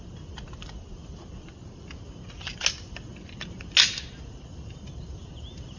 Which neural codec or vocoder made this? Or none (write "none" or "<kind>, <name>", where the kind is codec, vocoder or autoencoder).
none